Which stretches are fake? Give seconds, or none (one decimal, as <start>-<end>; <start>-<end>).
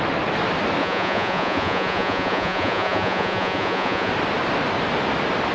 0.8-4.1